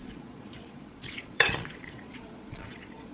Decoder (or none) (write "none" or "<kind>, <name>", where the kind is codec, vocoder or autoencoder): vocoder, Vocos